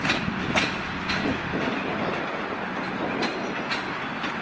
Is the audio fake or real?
real